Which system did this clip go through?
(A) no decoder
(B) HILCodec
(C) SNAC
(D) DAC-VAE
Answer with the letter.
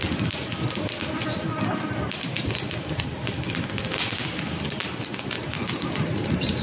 A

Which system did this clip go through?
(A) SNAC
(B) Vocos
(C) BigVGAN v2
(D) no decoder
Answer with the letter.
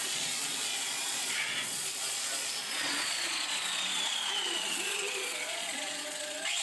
B